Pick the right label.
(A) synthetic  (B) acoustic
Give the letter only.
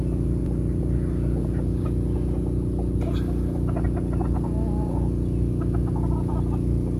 B